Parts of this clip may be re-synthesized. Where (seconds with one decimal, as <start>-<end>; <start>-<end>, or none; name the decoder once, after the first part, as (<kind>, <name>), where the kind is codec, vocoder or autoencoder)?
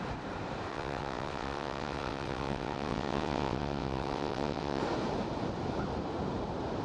0.7-4.8 (vocoder, WaveNeXt)